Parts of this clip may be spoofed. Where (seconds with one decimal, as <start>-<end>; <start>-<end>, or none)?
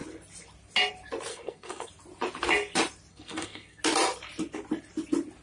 1.3-1.9; 3.1-3.8